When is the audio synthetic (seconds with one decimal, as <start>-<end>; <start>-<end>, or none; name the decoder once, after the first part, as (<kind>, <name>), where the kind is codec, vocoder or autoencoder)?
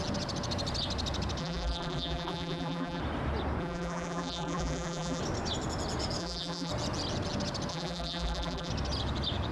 1.4-3.0 (vocoder, BigVGAN v2); 3.6-5.2; 6.2-6.7; 7.7-8.7